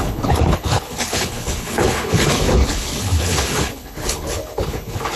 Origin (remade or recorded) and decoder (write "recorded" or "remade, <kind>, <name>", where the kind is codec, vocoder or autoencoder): remade, codec, HILCodec